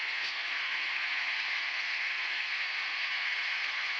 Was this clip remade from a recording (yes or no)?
yes